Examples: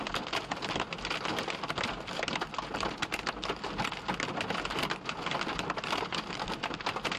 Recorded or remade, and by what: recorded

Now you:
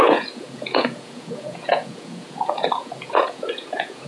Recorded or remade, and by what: remade, vocoder, Vocos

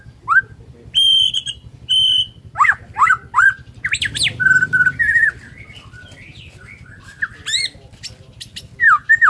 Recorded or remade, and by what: recorded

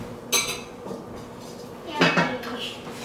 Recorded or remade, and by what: recorded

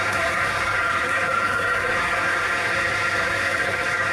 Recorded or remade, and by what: remade, codec, SNAC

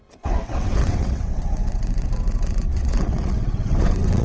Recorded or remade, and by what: remade, vocoder, WaveNeXt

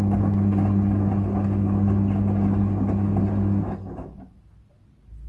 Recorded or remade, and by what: recorded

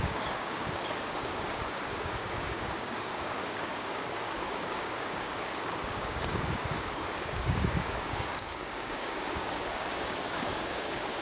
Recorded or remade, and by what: remade, codec, DAC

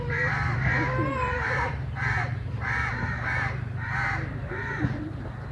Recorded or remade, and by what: remade, vocoder, BigVGAN v2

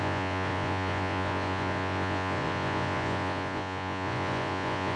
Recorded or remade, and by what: remade, vocoder, Vocos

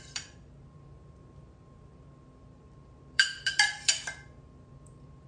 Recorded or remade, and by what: remade, vocoder, BigVGAN v2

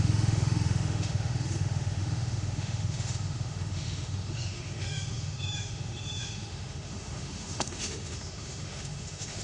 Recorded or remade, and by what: remade, autoencoder, DAC-VAE